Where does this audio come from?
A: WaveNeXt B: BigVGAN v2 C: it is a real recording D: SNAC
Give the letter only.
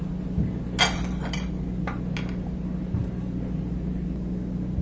C